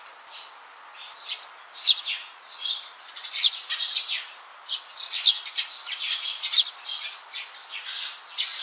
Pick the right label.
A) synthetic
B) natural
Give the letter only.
B